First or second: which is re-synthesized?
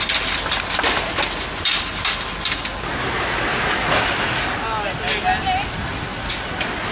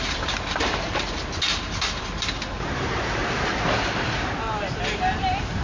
second